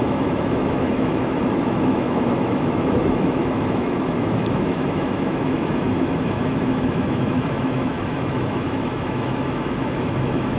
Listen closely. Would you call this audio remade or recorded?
remade